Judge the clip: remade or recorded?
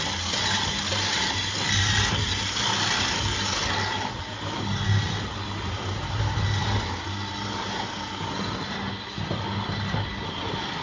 recorded